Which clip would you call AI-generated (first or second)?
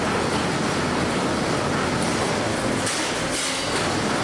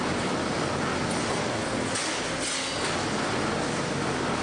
first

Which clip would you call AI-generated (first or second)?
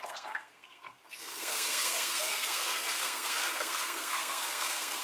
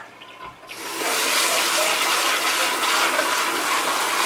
first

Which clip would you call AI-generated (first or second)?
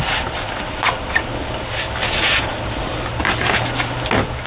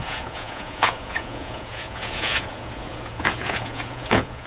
second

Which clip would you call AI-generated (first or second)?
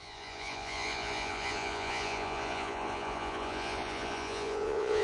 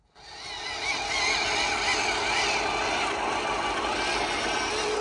first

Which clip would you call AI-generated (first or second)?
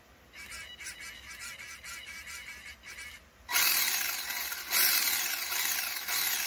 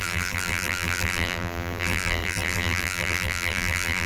second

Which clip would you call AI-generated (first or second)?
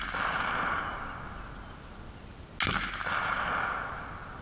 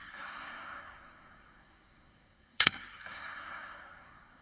second